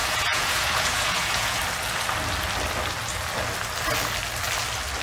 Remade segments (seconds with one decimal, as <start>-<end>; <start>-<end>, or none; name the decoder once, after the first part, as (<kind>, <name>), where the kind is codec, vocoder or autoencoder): 0.0-1.6 (vocoder, Vocos)